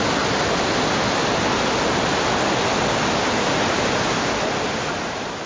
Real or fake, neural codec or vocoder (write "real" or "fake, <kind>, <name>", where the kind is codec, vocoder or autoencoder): real